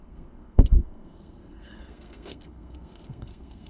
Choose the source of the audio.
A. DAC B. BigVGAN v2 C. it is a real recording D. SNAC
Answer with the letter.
D